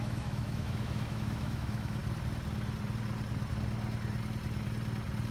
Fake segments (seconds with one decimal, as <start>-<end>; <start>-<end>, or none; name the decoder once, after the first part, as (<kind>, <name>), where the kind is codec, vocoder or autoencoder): 0.0-2.0 (autoencoder, DAC-VAE)